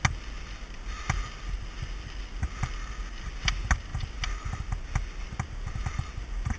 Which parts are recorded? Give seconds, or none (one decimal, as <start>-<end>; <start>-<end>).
0.0-6.6